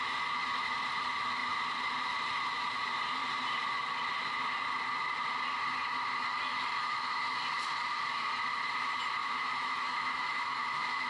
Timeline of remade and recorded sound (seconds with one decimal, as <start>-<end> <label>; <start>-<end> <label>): 0.0-6.5 recorded; 6.5-7.2 remade; 7.2-9.2 recorded; 9.2-11.1 remade